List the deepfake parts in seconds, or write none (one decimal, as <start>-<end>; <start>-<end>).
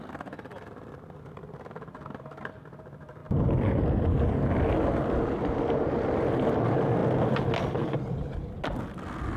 none